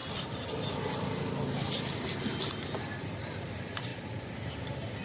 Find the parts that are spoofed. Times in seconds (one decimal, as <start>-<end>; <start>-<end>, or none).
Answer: 3.0-3.9

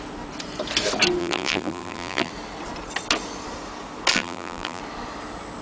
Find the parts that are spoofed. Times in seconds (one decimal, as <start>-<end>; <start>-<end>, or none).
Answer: 1.2-2.3; 4.1-4.8

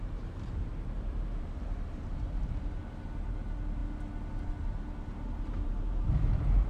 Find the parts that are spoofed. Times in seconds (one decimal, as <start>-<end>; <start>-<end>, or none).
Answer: 0.0-3.8; 5.4-6.7

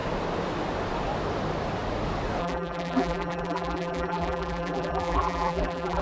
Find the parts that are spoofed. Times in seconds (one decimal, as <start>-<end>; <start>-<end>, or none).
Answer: 2.4-6.0

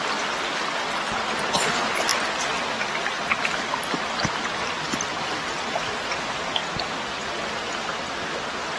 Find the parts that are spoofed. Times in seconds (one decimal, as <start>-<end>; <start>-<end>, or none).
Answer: 2.1-5.0

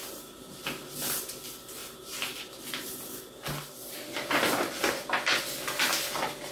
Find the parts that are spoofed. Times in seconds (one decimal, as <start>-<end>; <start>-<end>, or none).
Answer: 0.0-0.6; 1.8-2.4

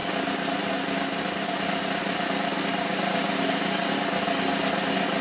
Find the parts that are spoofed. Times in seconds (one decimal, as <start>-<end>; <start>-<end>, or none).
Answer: none